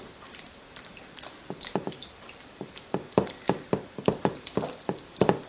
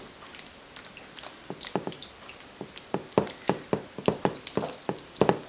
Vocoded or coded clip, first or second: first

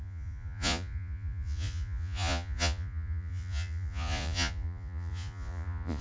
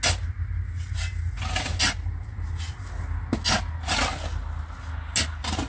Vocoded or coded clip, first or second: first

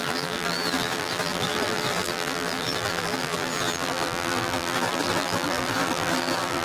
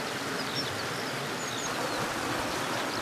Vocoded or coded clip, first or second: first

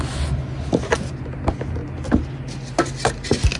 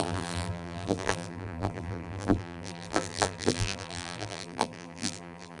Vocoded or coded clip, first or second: second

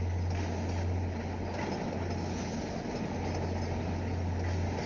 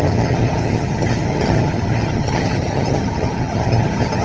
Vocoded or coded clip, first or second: second